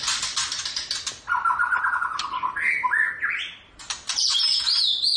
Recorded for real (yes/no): yes